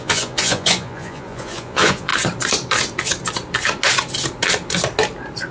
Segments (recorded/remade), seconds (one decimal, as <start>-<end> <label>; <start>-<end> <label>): 0.0-2.1 remade; 2.1-5.5 recorded